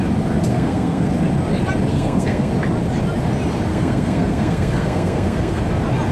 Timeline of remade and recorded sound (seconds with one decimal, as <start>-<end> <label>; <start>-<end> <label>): 0.0-0.5 recorded; 0.5-1.1 remade; 1.1-1.9 recorded; 1.9-2.5 remade; 2.5-3.7 recorded; 3.7-5.6 remade; 5.6-6.1 recorded